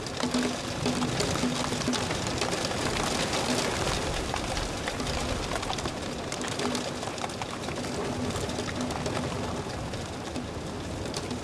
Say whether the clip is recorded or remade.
recorded